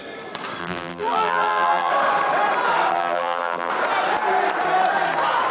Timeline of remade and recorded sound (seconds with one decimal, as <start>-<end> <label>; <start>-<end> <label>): 0.0-0.6 recorded; 0.6-1.9 remade; 1.9-2.9 recorded; 2.9-3.7 remade; 3.7-5.5 recorded